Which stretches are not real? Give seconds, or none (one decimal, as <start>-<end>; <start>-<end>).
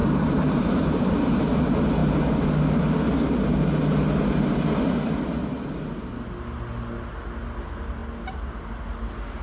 0.0-0.8